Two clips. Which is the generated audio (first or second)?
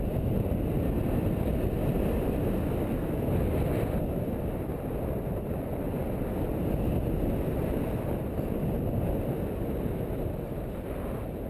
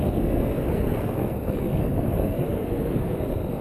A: second